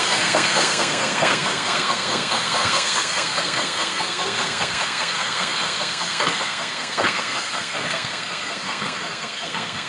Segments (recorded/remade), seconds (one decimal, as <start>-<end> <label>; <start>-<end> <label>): 0.0-9.9 remade